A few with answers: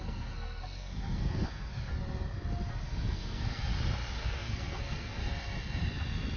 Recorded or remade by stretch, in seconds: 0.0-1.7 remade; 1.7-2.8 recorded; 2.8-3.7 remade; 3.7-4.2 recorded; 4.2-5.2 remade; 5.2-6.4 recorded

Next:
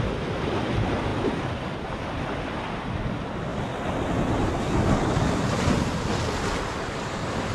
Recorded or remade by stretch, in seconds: 0.0-7.5 recorded

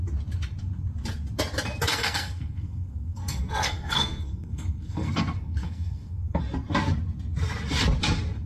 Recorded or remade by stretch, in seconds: 0.0-1.9 recorded; 1.9-6.4 remade; 6.4-8.5 recorded